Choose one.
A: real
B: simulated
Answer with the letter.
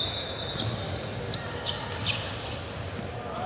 A